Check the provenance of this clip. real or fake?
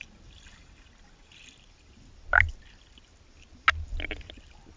real